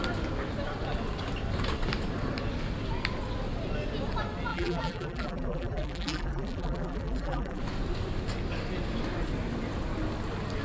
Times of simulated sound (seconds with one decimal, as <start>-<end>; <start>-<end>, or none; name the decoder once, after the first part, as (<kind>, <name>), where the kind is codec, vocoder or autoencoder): 4.5-7.6 (vocoder, BigVGAN v2)